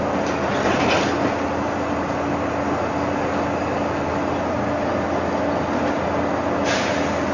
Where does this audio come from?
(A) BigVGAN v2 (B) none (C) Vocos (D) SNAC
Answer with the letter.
B